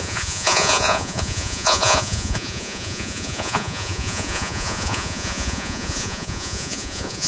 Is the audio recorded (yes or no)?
no